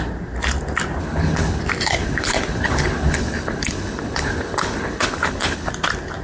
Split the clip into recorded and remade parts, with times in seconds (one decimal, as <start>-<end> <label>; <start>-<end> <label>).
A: 0.0-1.0 recorded; 1.0-1.6 remade; 1.6-2.0 recorded; 2.0-5.7 remade; 5.7-6.2 recorded